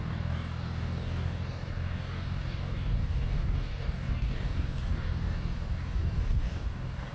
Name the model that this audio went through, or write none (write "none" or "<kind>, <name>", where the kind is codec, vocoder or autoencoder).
codec, DAC